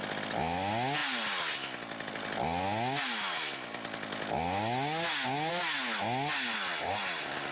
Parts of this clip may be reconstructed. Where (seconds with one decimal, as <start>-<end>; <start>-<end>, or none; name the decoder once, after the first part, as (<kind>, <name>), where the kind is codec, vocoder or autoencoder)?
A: none